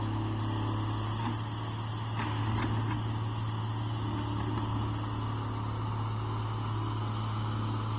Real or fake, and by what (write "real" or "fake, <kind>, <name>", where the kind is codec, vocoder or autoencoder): real